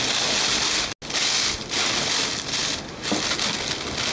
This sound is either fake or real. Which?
real